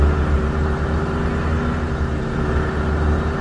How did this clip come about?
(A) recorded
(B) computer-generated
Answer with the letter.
A